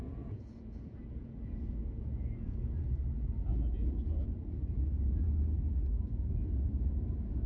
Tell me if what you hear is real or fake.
fake